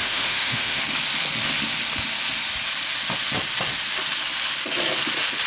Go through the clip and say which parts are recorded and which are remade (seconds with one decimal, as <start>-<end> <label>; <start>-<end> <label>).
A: 0.0-0.8 remade; 0.8-5.5 recorded